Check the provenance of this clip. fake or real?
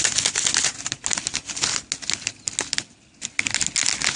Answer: real